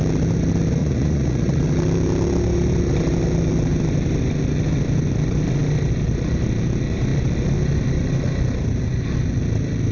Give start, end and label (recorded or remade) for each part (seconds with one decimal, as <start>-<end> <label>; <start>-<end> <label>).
0.0-0.8 recorded; 0.8-1.6 remade; 1.6-9.9 recorded

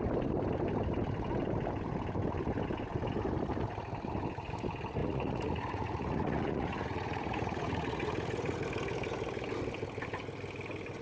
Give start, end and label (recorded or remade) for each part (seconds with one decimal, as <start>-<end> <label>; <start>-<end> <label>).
0.0-5.0 recorded; 5.0-8.6 remade; 8.6-11.0 recorded